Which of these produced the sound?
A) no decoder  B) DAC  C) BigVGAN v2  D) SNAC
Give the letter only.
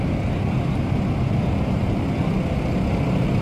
A